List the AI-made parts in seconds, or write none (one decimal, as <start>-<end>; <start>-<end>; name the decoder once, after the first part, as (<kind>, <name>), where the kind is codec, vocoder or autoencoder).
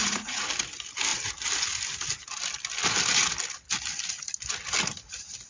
0.0-0.5 (vocoder, Vocos)